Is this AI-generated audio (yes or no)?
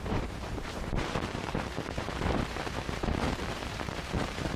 yes